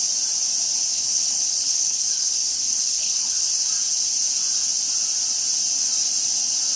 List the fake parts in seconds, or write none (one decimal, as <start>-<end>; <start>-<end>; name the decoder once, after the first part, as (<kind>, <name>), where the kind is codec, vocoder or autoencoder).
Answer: 0.9-3.5 (codec, HILCodec)